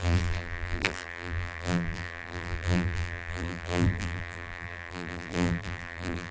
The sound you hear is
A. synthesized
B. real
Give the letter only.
A